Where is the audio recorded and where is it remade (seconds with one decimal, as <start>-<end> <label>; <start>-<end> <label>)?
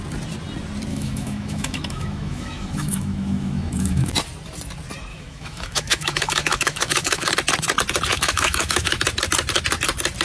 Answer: 0.0-0.9 recorded; 0.9-4.1 remade; 4.1-5.1 recorded; 5.1-7.3 remade; 7.3-8.1 recorded; 8.1-9.0 remade; 9.0-10.2 recorded